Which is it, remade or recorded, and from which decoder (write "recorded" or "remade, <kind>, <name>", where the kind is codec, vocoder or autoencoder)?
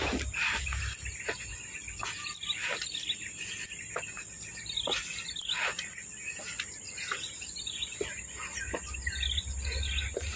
recorded